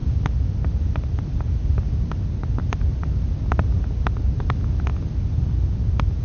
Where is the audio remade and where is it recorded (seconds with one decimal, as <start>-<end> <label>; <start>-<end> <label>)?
0.0-6.2 recorded